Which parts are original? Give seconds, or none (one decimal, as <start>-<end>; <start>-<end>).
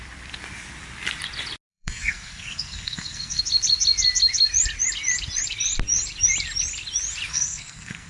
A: 0.0-1.7; 3.4-7.3